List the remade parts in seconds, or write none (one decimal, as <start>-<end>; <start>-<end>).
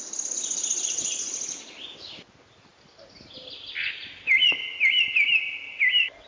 0.4-1.3